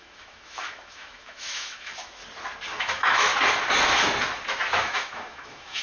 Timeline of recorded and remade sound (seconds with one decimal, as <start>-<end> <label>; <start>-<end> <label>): 0.0-2.2 remade; 2.2-2.8 recorded; 2.8-3.3 remade; 3.3-4.7 recorded; 4.7-5.8 remade